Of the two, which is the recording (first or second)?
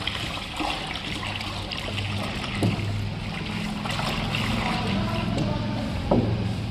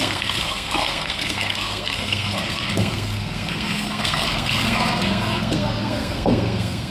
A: first